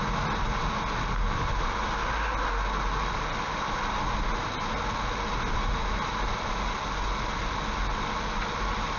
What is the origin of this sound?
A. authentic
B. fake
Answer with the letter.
A